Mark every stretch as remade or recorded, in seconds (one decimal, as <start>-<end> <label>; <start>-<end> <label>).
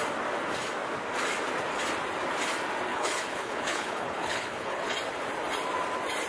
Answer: 0.0-2.9 recorded; 2.9-4.8 remade; 4.8-6.3 recorded